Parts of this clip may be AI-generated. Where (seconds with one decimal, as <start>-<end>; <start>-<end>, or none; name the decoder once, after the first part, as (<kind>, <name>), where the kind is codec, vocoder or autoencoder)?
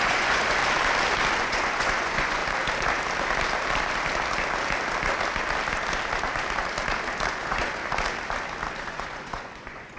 0.0-0.6 (vocoder, Vocos); 1.4-2.4; 7.3-7.8; 8.9-10.0